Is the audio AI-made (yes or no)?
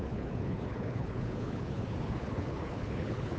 yes